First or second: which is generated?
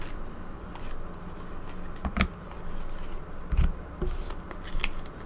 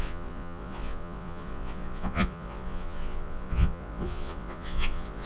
second